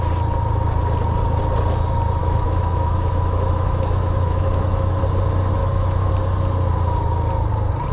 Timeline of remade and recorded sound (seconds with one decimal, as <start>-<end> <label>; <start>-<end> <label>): 0.0-2.2 recorded; 2.2-5.0 remade; 5.0-5.6 recorded; 5.6-6.1 remade; 6.1-7.9 recorded